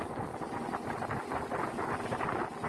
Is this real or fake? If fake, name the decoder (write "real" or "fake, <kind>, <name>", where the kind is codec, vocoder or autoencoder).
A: real